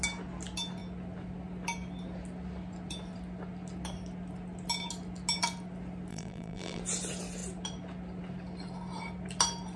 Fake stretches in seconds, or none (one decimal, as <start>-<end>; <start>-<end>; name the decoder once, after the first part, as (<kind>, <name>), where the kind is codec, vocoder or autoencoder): 6.1-6.8 (vocoder, BigVGAN v2)